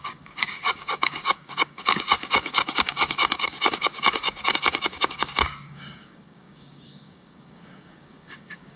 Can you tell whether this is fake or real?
fake